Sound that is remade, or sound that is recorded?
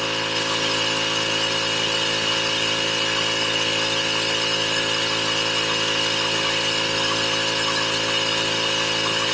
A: recorded